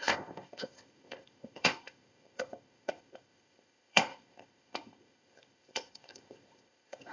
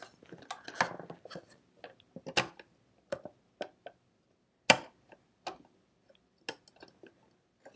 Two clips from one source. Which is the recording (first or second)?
second